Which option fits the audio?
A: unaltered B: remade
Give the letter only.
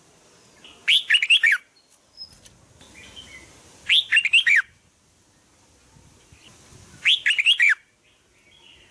A